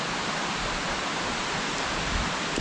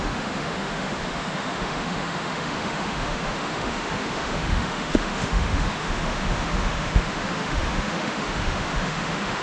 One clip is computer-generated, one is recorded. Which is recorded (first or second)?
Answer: first